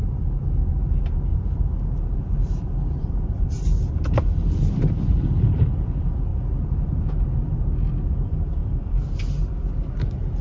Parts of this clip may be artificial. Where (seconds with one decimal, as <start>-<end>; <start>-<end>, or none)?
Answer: 1.3-5.7; 6.3-7.1; 8.6-9.2